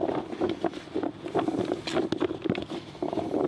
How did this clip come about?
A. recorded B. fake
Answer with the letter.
A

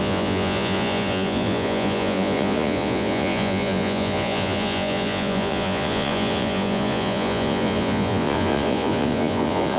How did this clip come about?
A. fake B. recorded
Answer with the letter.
A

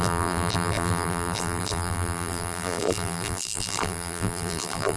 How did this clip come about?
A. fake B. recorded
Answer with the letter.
A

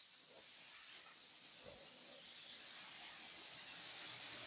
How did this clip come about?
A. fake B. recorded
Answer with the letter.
B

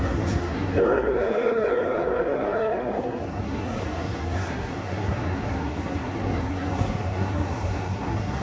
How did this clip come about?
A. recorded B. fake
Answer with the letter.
B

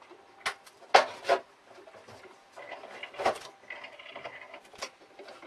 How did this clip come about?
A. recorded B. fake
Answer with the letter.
A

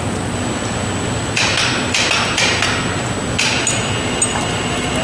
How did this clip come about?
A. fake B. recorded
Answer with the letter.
B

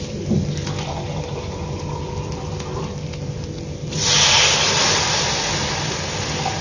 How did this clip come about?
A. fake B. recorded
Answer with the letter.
B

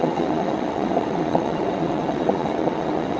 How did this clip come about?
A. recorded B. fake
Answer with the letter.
B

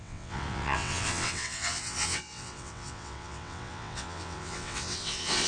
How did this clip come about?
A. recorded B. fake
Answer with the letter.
B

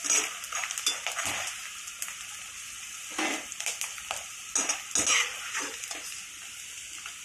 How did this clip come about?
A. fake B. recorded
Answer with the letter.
B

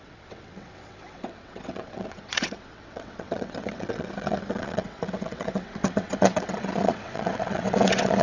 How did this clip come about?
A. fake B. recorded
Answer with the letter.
A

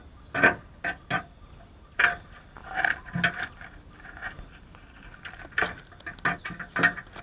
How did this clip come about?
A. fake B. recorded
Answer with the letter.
B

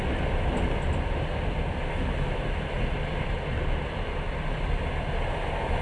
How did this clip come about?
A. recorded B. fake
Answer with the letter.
A